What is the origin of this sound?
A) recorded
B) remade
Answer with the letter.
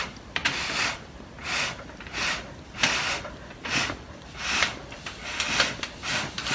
B